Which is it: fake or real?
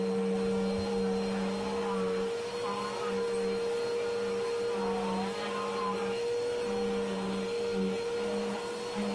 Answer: real